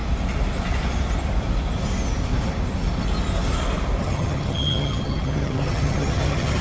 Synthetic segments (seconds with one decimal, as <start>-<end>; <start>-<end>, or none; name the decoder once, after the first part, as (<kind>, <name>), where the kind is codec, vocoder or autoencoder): 4.0-6.6 (vocoder, HiFi-GAN)

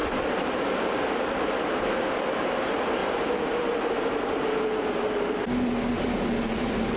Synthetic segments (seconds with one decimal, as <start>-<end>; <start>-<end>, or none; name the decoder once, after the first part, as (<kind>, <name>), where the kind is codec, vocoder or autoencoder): 1.3-7.0 (vocoder, BigVGAN v2)

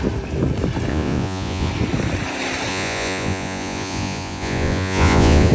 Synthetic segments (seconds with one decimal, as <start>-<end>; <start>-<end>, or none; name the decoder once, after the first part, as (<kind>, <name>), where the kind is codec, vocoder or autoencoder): 0.9-1.7 (vocoder, Vocos); 2.7-5.5

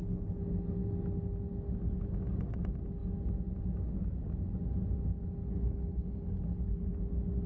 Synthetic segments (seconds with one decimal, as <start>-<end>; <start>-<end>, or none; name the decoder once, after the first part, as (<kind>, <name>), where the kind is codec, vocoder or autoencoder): 5.4-7.0 (codec, HILCodec)

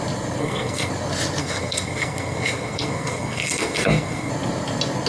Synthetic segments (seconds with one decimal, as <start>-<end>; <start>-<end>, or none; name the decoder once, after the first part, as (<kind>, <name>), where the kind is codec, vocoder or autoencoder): 0.4-0.9 (codec, SNAC); 1.4-4.3